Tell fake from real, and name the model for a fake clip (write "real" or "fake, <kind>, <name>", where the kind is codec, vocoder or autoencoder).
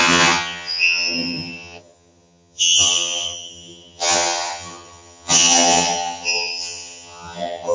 fake, vocoder, HiFi-GAN